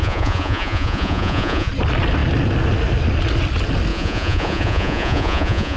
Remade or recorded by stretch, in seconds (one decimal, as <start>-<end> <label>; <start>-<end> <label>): 0.0-1.7 remade; 1.7-3.9 recorded; 3.9-5.8 remade